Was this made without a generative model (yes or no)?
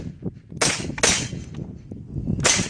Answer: yes